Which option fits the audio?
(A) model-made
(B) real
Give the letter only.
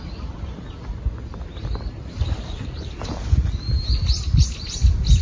B